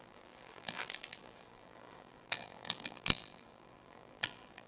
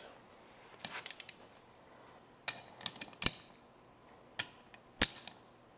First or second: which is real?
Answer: second